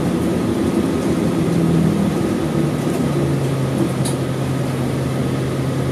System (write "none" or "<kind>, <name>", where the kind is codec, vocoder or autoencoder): none